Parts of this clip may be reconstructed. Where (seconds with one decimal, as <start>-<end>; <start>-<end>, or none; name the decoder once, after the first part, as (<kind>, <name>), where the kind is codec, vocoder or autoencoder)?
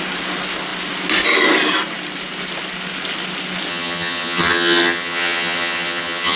3.7-6.4 (vocoder, HiFi-GAN)